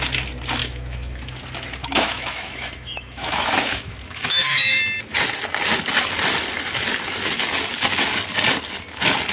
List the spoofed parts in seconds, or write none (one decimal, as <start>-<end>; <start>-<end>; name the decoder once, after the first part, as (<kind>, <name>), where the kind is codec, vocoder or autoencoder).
0.6-1.4 (autoencoder, DAC-VAE); 1.8-4.8